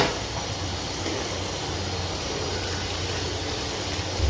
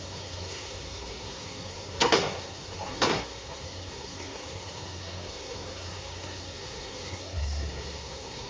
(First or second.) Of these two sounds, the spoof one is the second